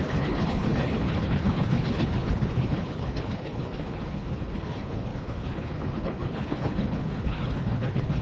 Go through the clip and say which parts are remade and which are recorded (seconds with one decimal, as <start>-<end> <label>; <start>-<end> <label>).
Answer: 0.0-8.2 remade